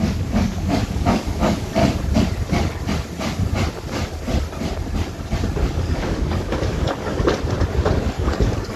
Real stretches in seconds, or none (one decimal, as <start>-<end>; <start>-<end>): 1.8-5.6; 7.3-7.9